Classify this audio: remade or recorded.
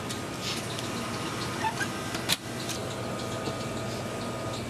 recorded